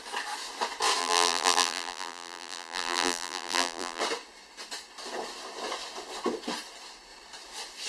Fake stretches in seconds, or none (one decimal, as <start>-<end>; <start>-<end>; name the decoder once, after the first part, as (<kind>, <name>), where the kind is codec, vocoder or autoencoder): 1.0-4.0 (vocoder, BigVGAN v2)